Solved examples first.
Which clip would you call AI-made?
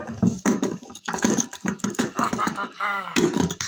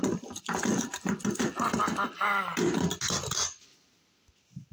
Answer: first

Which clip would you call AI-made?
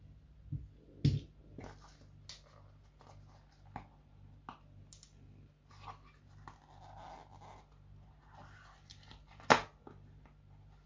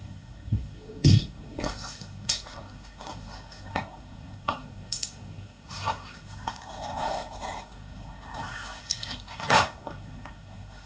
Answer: second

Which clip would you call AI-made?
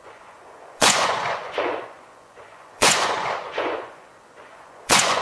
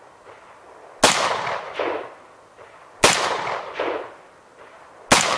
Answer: first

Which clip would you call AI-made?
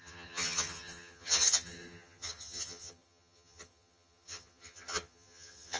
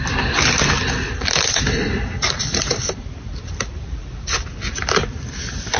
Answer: first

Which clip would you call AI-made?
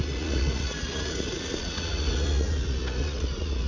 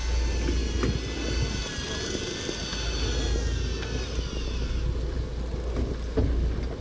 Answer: first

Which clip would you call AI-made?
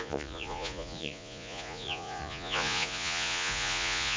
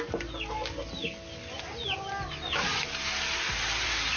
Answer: first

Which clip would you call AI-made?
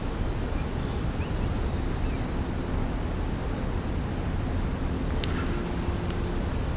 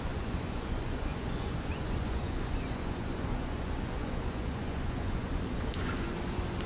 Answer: second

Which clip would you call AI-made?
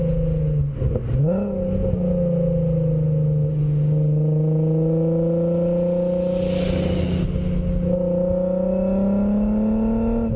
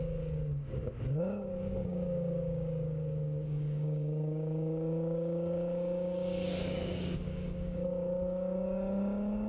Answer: second